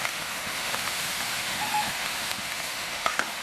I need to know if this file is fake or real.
fake